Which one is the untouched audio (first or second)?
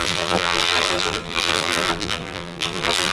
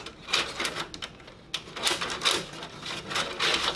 second